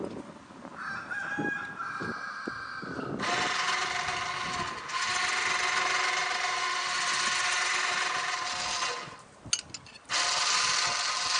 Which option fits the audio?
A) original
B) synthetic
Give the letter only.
A